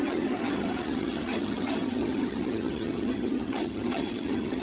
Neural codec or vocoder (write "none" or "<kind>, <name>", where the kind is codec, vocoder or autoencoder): vocoder, HiFi-GAN